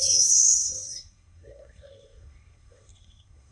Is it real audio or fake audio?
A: fake